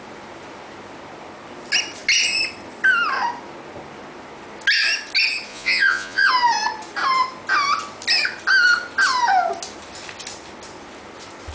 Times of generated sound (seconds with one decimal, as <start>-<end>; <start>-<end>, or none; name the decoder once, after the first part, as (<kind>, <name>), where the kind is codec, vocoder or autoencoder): 5.5-6.3 (vocoder, Vocos)